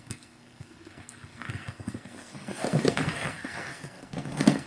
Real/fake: fake